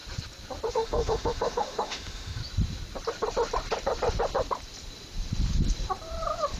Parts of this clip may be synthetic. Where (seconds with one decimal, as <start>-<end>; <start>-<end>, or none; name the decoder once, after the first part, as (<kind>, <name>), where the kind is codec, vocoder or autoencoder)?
0.7-2.4 (autoencoder, DAC-VAE)